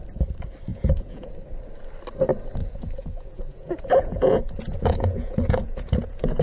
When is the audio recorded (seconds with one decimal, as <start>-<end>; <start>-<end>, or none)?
0.0-0.7; 1.3-2.6